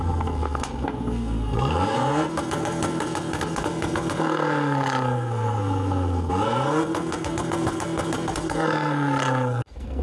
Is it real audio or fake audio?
fake